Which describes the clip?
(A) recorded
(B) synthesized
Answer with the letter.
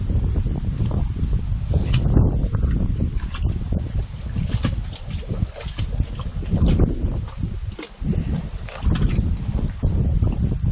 A